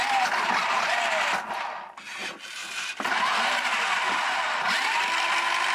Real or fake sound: real